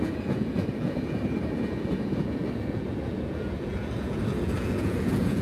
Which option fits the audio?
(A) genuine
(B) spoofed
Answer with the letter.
B